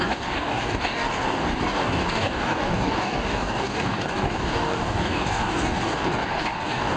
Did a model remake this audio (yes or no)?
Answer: yes